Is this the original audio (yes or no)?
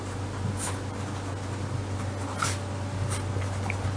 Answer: yes